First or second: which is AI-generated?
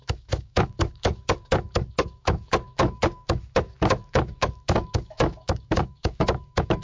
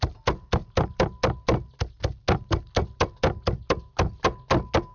first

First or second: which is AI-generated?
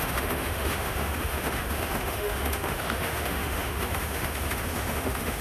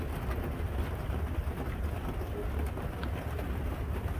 first